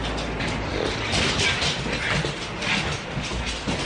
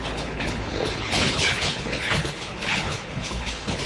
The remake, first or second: second